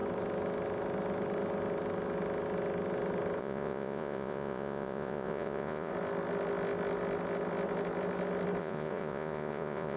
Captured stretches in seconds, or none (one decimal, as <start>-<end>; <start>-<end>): 0.0-3.4; 5.9-8.6